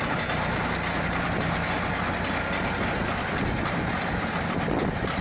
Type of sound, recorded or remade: recorded